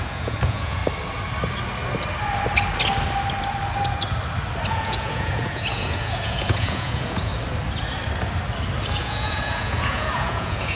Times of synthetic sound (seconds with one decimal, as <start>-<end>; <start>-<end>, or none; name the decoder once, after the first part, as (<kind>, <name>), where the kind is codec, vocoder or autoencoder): 0.0-0.8 (vocoder, Vocos); 4.7-7.3; 9.0-10.8